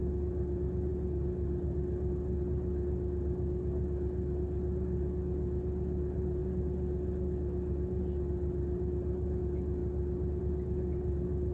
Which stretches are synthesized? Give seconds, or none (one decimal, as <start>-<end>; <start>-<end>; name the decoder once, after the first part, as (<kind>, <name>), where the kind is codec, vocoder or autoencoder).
none